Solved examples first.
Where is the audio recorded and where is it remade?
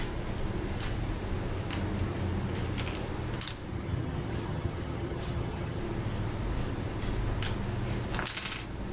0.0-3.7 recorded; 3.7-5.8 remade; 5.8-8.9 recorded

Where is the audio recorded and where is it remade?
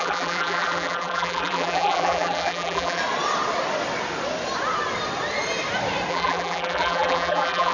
0.0-3.0 remade; 3.0-6.1 recorded; 6.1-7.7 remade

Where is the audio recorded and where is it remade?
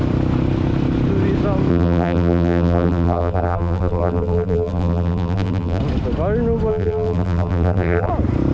0.0-1.7 recorded; 1.7-5.8 remade; 5.8-6.7 recorded; 6.7-8.1 remade; 8.1-8.5 recorded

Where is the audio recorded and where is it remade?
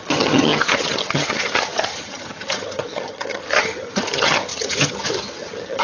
0.0-5.8 remade